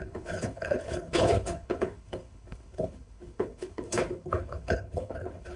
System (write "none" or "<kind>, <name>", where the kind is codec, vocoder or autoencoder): codec, HILCodec